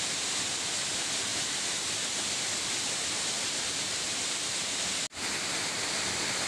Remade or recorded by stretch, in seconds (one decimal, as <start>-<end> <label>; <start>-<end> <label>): 0.0-6.5 recorded